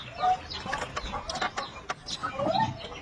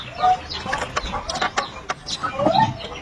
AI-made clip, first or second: first